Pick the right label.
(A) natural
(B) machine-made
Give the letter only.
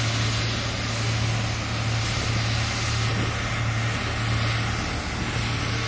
A